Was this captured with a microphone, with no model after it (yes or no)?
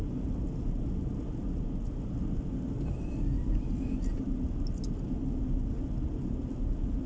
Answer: yes